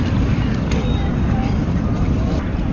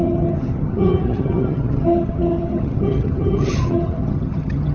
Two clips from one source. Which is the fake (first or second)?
second